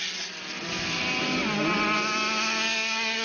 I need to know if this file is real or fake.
real